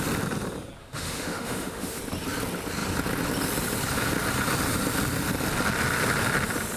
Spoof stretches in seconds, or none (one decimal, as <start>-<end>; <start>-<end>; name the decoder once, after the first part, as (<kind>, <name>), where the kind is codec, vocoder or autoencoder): 0.8-2.0 (autoencoder, DAC-VAE)